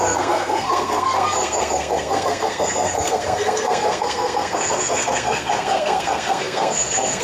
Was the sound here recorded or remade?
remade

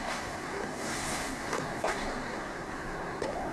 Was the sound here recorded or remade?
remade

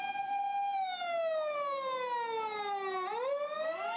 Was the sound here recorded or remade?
recorded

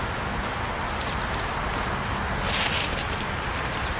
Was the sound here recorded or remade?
recorded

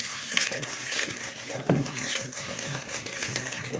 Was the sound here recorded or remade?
remade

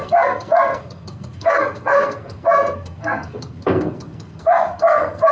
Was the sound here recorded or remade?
remade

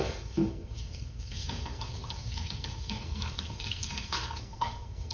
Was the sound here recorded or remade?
remade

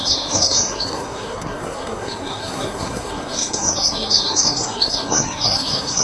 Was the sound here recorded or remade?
remade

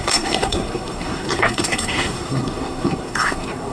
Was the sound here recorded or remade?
remade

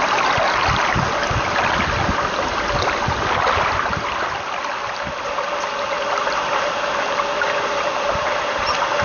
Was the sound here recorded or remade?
recorded